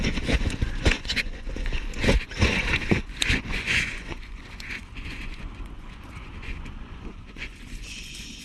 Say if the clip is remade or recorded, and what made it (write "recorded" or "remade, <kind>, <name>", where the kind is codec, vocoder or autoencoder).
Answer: remade, vocoder, Vocos